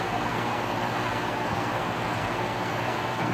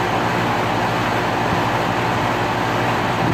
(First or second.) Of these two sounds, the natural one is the second